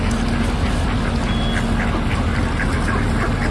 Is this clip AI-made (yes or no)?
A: no